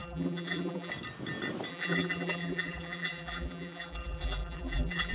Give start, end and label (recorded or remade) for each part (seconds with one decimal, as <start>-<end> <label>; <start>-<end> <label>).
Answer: 0.0-0.9 remade; 0.9-1.7 recorded; 1.7-5.1 remade